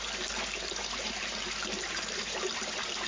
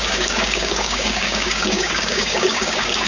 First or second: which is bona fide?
first